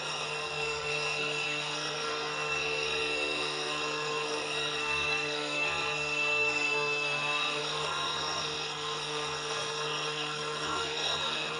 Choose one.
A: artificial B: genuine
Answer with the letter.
A